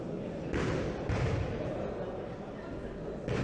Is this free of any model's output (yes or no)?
no